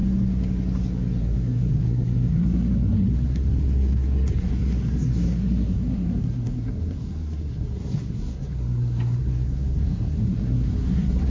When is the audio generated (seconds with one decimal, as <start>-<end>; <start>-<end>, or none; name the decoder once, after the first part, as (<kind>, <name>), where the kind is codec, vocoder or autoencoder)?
1.2-11.3 (codec, SNAC)